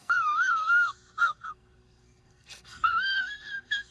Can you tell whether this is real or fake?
fake